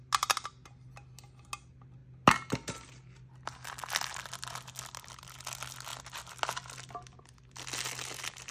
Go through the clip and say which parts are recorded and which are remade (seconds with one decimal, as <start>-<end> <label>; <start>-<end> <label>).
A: 0.0-8.5 recorded